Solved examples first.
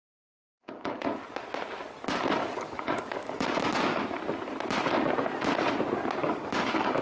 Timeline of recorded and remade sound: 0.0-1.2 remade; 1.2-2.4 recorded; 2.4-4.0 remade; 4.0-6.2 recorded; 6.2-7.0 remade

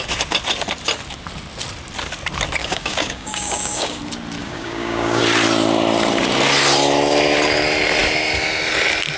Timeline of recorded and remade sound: 0.0-2.6 recorded; 2.6-4.0 remade; 4.0-4.4 recorded; 4.4-5.2 remade; 5.2-9.2 recorded